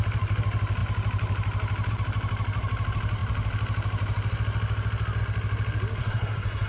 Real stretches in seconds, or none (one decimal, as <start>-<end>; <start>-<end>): 0.0-6.0

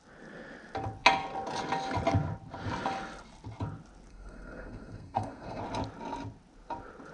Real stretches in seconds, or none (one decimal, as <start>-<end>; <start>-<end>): 0.0-4.1; 5.6-7.1

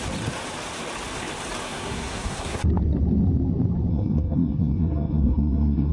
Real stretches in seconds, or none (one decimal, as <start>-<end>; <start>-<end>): 0.0-1.6; 2.6-3.9

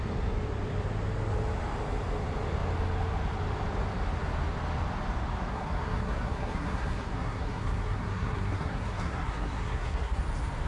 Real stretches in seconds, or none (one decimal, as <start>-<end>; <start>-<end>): 0.0-5.5; 10.2-10.7